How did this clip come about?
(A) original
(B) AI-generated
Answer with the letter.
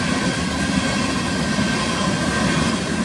A